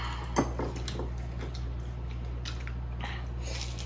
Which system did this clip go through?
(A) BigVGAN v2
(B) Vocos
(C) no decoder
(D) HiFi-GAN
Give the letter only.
C